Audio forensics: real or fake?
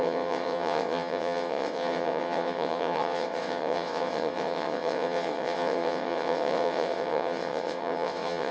fake